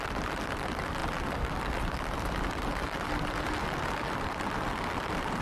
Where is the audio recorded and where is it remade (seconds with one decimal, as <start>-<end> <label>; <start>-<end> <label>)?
0.0-5.4 recorded